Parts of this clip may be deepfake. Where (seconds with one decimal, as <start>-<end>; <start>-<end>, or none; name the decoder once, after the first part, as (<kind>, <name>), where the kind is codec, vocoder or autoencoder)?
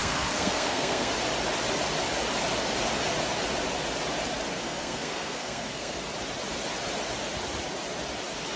0.0-1.1 (codec, SNAC); 4.5-6.0